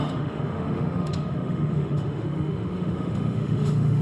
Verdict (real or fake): fake